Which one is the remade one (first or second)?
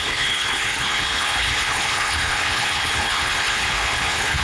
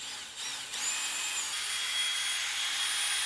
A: first